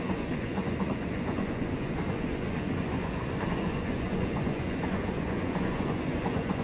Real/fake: fake